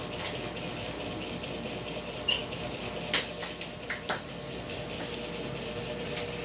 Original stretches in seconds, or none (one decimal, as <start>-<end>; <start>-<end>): 0.0-6.4